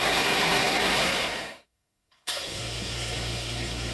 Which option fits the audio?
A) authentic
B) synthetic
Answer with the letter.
B